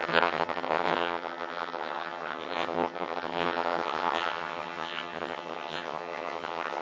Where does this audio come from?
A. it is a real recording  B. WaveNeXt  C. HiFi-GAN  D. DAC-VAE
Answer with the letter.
C